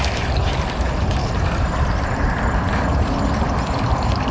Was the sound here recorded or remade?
recorded